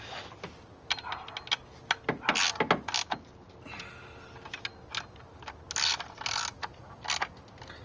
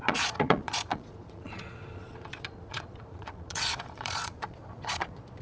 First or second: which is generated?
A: second